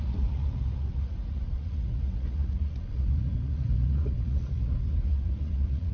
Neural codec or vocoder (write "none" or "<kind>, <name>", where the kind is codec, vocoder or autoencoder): vocoder, Vocos